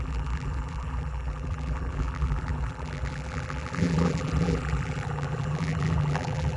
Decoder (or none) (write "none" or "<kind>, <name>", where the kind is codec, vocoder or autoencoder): vocoder, BigVGAN v2